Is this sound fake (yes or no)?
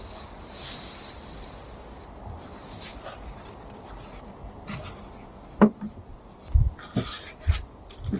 no